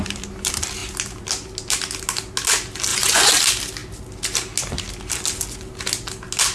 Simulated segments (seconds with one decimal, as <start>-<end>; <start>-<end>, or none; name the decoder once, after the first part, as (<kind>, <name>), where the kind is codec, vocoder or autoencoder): 2.9-3.4 (vocoder, Vocos)